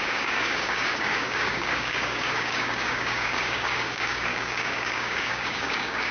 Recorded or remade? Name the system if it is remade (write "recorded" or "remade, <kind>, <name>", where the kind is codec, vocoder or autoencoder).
remade, codec, DAC